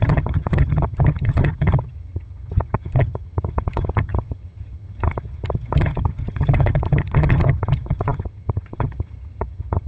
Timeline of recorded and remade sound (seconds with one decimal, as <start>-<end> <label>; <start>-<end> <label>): 0.0-9.9 remade